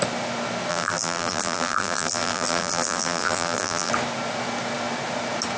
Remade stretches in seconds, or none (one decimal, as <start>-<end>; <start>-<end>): 0.7-3.9